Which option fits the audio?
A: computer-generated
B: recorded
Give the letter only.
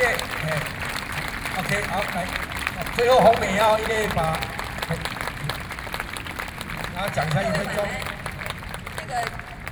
A